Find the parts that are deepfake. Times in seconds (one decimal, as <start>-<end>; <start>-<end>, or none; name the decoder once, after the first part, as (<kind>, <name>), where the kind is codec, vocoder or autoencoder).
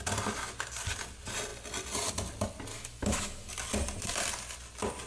2.7-3.5 (autoencoder, DAC-VAE)